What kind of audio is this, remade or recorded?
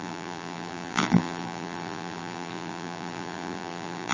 remade